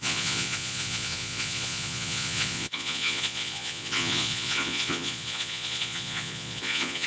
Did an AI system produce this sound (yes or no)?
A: yes